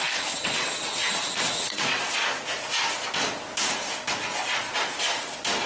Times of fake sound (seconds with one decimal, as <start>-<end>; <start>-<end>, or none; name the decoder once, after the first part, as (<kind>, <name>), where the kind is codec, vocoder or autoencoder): 0.0-2.2 (vocoder, WaveNeXt)